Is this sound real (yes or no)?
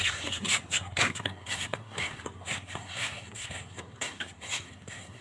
no